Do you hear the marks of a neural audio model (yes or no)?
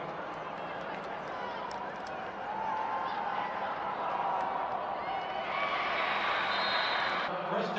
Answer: no